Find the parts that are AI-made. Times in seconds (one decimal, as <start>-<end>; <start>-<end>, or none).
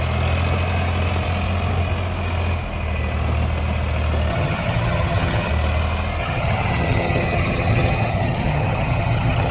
4.3-5.5; 6.2-9.5